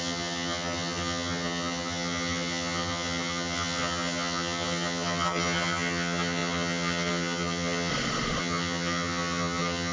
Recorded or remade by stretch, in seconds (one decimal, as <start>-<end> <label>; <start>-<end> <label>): 0.0-7.9 remade; 7.9-8.4 recorded; 8.4-9.9 remade